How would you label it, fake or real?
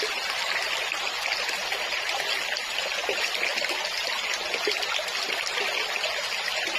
real